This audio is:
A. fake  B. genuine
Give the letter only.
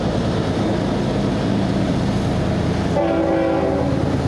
B